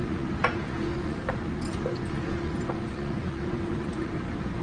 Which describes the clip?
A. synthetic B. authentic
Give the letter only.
A